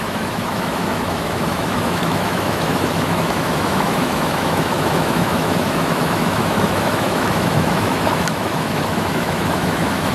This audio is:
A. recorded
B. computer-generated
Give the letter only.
B